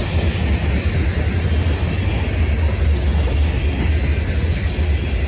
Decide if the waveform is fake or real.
real